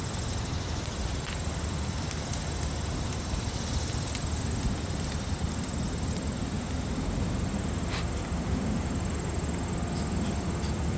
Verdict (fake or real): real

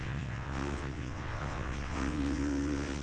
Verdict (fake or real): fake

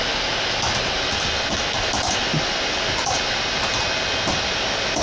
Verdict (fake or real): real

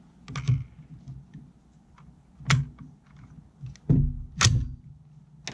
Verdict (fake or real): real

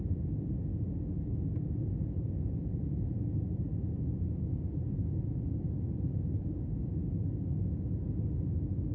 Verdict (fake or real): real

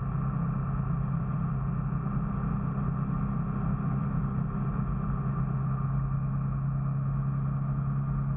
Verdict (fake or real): real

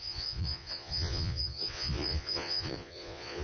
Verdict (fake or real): fake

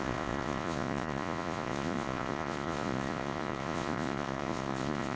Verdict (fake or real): fake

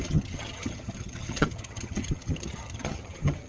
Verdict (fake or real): fake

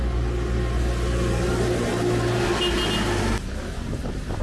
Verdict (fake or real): real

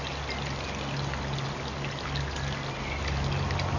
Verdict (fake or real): real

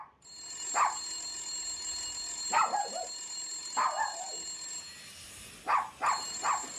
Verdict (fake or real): real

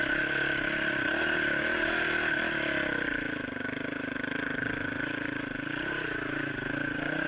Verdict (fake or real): real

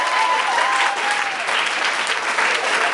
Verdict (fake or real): real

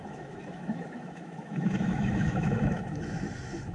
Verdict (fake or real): fake